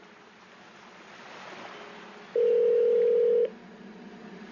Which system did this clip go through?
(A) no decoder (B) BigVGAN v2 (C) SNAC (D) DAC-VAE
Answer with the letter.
A